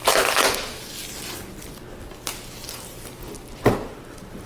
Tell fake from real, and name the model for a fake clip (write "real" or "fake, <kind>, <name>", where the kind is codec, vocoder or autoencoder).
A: real